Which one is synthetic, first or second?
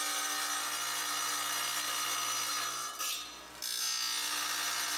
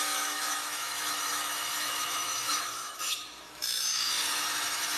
second